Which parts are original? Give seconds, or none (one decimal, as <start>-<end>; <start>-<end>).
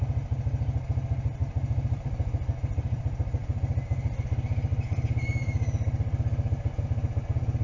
0.0-1.4; 3.0-4.7; 6.8-7.6